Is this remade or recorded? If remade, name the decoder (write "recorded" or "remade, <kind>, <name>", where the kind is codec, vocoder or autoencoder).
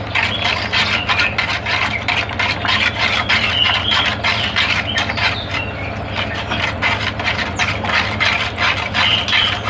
recorded